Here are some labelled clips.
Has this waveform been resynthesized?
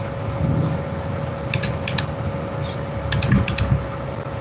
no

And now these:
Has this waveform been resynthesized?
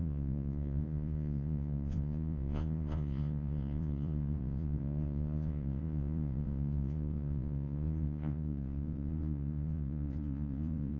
yes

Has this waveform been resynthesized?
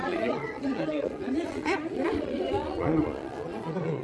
yes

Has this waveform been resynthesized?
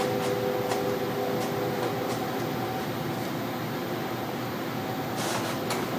no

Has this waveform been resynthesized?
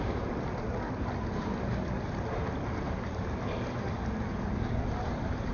no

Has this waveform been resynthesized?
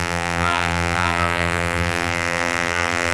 yes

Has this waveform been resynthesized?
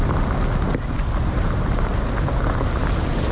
no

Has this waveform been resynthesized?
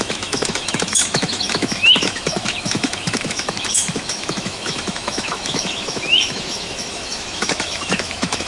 yes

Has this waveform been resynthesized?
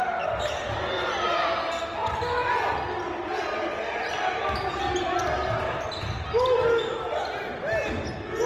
no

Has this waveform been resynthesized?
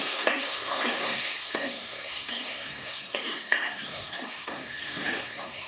yes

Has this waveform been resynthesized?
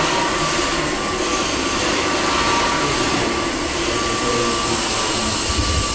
no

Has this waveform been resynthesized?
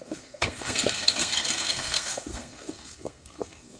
yes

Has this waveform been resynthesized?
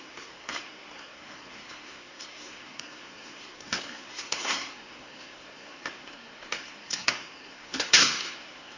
yes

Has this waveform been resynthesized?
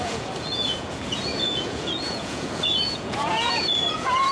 yes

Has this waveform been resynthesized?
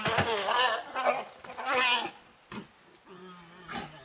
no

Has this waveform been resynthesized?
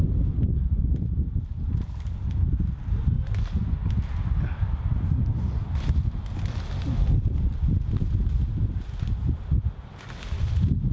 no